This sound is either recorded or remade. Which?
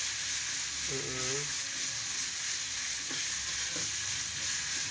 recorded